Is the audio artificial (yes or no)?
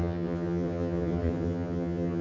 yes